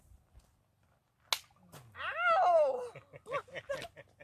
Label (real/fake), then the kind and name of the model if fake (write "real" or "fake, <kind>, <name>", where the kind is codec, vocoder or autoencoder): real